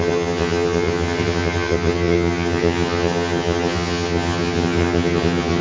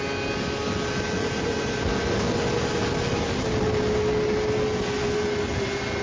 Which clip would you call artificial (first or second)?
first